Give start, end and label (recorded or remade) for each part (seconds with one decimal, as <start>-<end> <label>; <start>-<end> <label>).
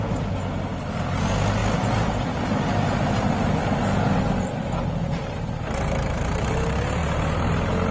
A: 0.0-7.9 recorded